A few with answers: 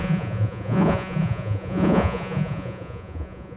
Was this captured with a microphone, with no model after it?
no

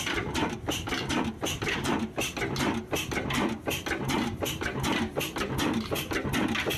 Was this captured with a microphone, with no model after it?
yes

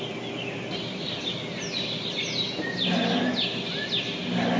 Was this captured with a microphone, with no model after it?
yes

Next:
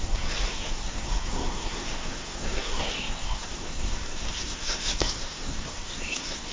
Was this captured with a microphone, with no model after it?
no